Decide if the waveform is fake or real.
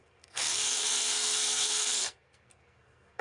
fake